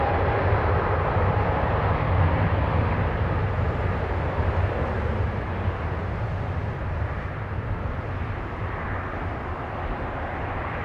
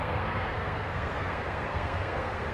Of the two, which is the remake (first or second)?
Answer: second